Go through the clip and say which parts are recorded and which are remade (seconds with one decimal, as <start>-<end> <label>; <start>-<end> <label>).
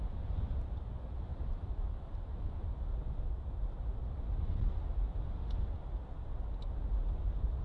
0.0-1.3 recorded; 1.3-2.7 remade; 2.7-4.0 recorded; 4.0-4.7 remade; 4.7-7.6 recorded